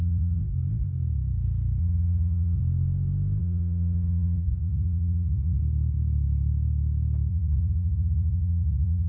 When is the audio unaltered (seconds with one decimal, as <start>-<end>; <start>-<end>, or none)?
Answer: 0.4-1.8; 2.6-3.4; 5.6-7.3